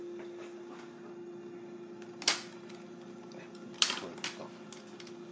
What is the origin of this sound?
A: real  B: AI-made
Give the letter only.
A